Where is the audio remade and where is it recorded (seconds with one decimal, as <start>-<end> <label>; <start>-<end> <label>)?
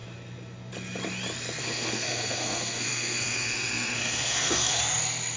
0.0-1.6 recorded; 1.6-4.8 remade; 4.8-5.4 recorded